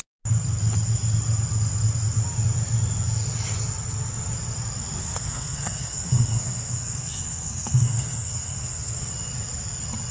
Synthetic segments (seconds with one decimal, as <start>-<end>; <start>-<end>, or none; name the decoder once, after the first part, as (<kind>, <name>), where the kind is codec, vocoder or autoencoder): 5.0-9.1 (codec, SNAC)